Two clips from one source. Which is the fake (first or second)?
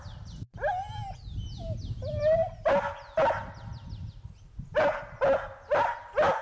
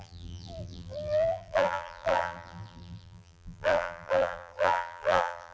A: second